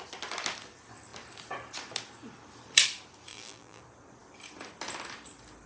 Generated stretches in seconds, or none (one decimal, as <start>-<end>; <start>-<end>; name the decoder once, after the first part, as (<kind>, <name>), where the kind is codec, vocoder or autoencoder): 3.3-3.8 (vocoder, BigVGAN v2)